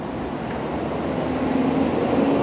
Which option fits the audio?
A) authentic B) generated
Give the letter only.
A